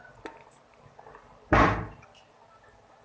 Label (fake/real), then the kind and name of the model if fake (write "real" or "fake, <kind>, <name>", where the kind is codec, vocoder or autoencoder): real